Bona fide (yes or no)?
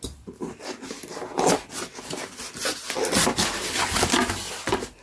yes